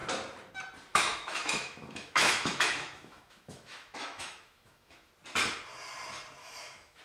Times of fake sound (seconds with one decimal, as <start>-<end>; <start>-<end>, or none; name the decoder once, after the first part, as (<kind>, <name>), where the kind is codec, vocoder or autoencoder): 0.9-5.1 (autoencoder, DAC-VAE); 6.4-7.0